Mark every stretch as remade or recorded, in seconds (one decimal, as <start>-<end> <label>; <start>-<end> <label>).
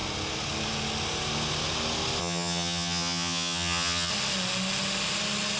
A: 0.0-2.2 recorded; 2.2-4.1 remade; 4.1-5.6 recorded